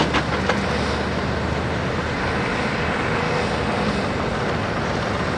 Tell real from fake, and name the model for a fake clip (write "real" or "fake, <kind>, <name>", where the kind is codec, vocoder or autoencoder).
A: real